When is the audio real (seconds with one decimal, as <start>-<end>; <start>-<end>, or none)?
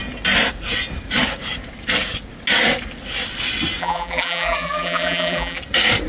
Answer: 0.0-3.8; 5.6-6.1